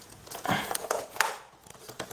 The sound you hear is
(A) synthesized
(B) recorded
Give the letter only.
A